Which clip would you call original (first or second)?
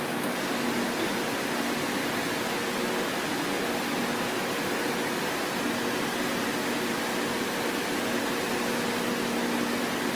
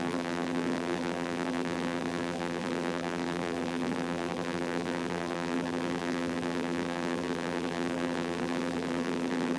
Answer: first